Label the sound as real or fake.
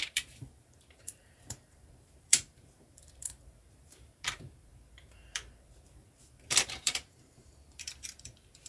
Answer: fake